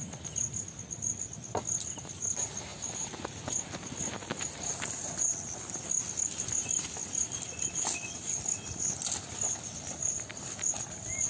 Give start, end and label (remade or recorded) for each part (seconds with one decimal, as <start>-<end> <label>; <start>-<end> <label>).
0.0-11.3 recorded